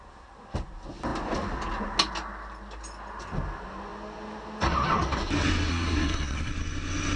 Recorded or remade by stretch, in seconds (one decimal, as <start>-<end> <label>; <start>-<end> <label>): 0.0-5.7 recorded; 5.7-6.5 remade; 6.5-7.2 recorded